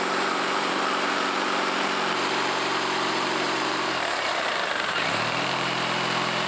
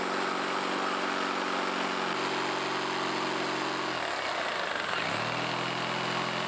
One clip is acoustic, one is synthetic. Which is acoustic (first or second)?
second